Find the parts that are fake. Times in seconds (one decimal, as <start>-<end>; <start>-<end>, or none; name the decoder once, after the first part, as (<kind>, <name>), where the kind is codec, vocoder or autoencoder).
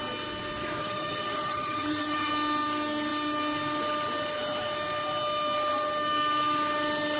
0.8-2.3 (vocoder, HiFi-GAN)